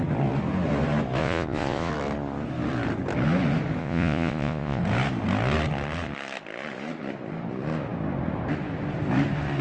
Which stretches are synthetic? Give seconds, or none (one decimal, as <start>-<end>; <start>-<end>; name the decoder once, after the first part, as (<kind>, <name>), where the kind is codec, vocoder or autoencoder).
1.2-1.9 (vocoder, Vocos); 3.8-4.8